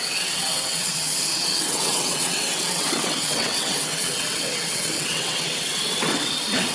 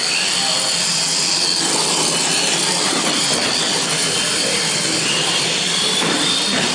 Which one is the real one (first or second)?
second